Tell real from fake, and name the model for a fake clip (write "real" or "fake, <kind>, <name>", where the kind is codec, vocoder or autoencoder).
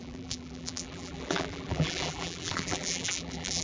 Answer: fake, vocoder, BigVGAN v2